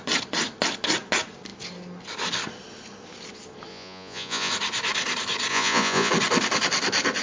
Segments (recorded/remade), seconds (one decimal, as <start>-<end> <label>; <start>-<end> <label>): 0.0-3.7 recorded; 3.7-4.5 remade; 4.5-5.5 recorded; 5.5-6.1 remade; 6.1-7.2 recorded